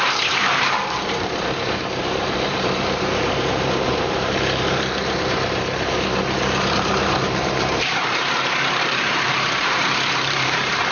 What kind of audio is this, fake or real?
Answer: fake